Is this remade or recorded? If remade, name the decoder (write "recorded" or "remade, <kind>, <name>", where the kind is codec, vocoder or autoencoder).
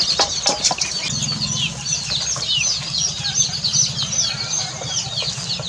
recorded